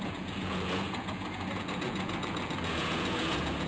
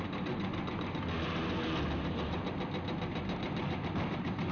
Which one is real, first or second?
second